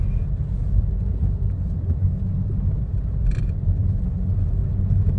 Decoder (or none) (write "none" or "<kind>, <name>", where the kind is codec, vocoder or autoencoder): none